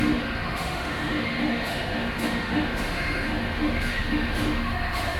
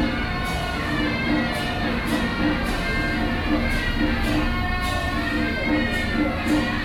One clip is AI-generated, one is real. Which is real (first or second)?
second